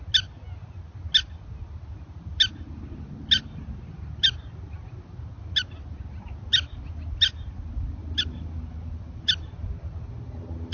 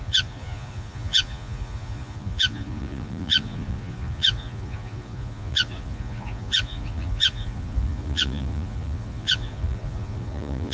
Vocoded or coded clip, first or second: second